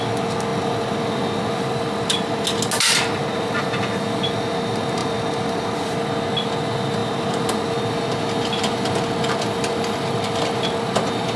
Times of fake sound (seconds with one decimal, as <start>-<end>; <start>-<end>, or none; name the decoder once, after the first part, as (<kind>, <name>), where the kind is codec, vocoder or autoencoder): 5.0-6.0 (vocoder, BigVGAN v2)